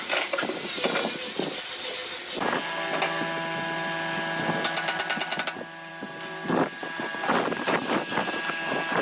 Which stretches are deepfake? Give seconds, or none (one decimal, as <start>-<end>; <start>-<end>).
none